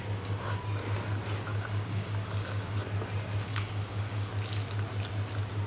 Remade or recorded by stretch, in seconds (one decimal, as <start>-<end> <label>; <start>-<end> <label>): 0.0-1.5 recorded; 1.5-2.8 remade; 2.8-3.5 recorded; 3.5-4.3 remade; 4.3-5.7 recorded